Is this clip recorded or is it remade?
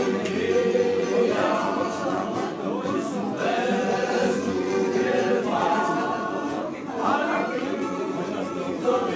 remade